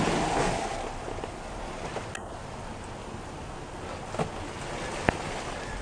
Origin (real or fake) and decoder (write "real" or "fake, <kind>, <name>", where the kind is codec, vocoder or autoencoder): real